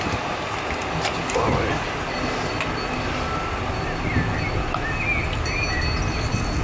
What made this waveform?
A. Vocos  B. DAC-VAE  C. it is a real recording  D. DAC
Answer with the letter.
C